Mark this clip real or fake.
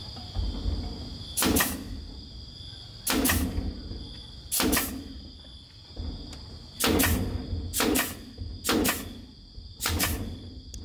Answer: real